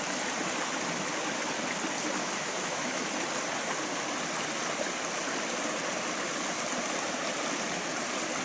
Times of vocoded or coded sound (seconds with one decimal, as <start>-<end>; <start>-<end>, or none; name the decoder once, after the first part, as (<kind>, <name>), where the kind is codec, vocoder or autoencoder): 2.2-3.0 (autoencoder, DAC-VAE)